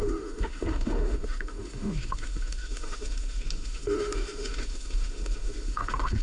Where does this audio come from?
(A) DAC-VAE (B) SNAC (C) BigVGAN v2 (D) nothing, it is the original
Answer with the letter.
A